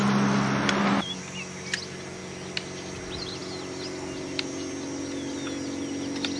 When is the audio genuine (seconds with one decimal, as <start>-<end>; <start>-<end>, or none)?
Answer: 0.0-6.4